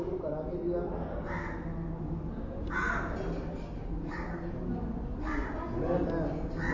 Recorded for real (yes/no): yes